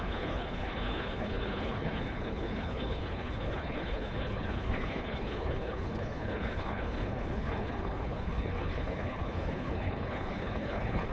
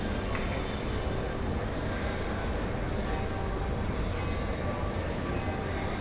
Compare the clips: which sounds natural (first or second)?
second